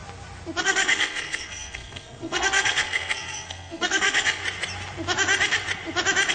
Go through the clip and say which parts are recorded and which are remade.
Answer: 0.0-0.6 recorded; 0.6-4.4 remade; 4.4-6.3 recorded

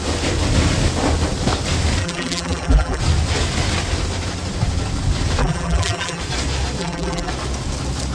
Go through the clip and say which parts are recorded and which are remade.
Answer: 0.0-2.0 recorded; 2.0-3.0 remade; 3.0-5.4 recorded; 5.4-6.2 remade; 6.2-6.8 recorded; 6.8-7.3 remade; 7.3-8.1 recorded